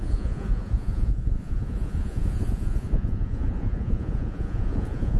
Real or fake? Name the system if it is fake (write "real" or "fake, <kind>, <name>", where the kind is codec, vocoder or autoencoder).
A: fake, vocoder, Vocos